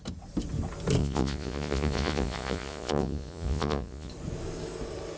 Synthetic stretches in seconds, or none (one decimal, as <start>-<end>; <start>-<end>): 1.0-4.1